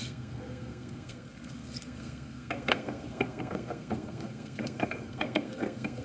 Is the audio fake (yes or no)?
yes